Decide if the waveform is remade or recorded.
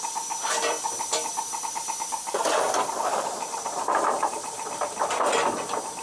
remade